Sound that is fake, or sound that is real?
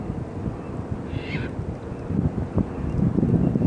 fake